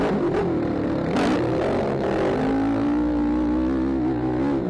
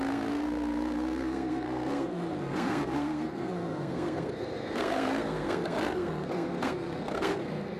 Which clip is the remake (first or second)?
second